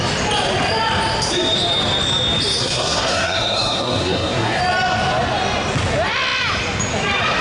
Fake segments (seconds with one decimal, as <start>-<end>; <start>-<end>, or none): 2.6-4.6